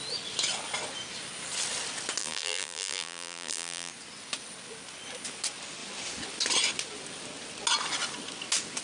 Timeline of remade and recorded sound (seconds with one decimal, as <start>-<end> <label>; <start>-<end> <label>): 0.0-2.2 recorded; 2.2-3.9 remade; 3.9-8.8 recorded